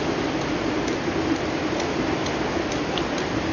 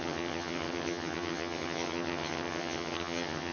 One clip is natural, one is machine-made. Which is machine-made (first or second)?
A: second